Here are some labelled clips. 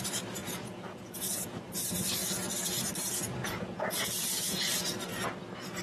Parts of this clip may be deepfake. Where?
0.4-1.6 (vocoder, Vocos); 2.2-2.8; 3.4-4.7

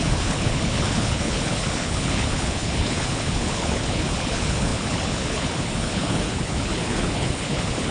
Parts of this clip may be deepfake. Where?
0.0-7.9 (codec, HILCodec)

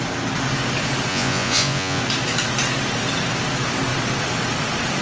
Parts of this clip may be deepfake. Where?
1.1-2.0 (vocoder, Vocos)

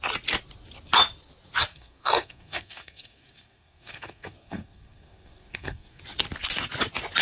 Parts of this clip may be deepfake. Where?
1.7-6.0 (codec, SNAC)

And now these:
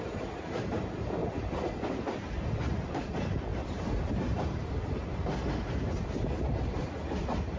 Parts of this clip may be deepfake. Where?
0.0-1.2 (vocoder, BigVGAN v2); 2.3-7.6

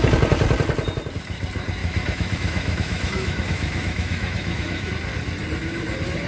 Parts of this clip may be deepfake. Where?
1.8-4.9 (autoencoder, DAC-VAE)

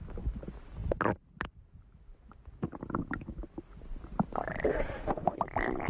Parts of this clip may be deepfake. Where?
4.7-5.4 (autoencoder, DAC-VAE)

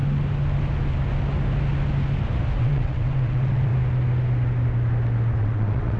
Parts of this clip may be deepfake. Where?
2.6-3.7 (vocoder, WaveNeXt); 5.4-6.0